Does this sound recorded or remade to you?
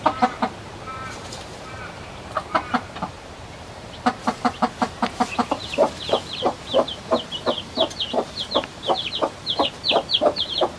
remade